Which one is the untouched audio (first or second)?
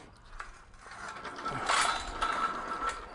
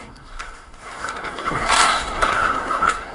first